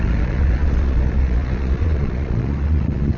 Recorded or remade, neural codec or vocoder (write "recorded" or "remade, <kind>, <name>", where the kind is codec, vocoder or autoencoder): remade, vocoder, Vocos